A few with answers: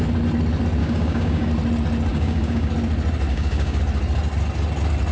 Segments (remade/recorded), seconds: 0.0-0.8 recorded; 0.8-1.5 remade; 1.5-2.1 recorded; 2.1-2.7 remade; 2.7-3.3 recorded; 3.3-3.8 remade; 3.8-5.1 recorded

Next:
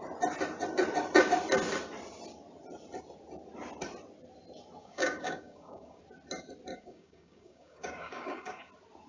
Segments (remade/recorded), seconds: 0.0-4.8 recorded; 4.8-6.0 remade; 6.0-6.7 recorded; 6.7-8.7 remade; 8.7-9.1 recorded

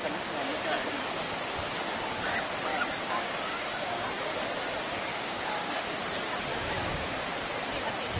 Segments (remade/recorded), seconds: 0.0-2.7 recorded; 2.7-4.1 remade; 4.1-5.1 recorded; 5.1-5.8 remade; 5.8-6.5 recorded; 6.5-7.1 remade; 7.1-8.2 recorded

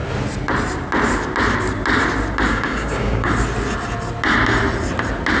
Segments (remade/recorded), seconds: 0.0-2.5 recorded; 2.5-3.3 remade; 3.3-5.4 recorded